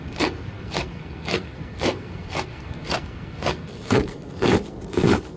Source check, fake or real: fake